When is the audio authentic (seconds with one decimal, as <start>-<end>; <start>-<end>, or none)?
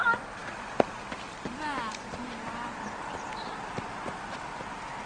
none